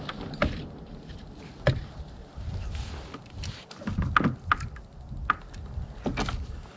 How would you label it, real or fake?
real